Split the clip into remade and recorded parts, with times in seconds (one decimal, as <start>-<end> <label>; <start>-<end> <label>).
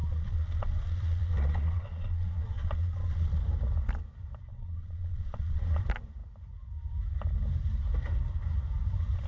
0.0-3.4 remade; 3.4-4.5 recorded; 4.5-5.8 remade; 5.8-9.3 recorded